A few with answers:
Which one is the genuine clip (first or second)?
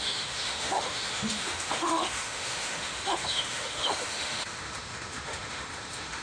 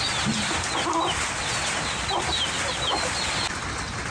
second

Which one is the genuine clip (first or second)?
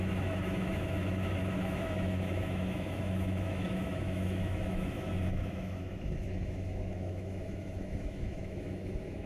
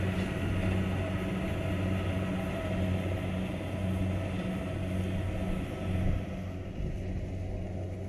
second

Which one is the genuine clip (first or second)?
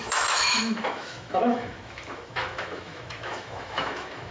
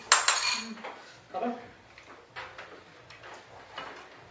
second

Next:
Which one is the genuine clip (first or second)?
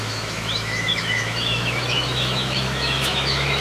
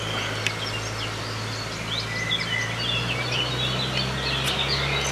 second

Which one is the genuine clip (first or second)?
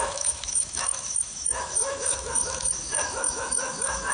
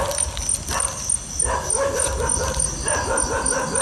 second